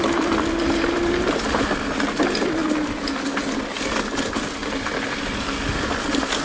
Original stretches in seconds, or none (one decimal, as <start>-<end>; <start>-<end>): 0.0-6.4